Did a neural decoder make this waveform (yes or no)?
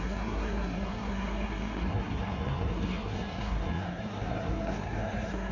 yes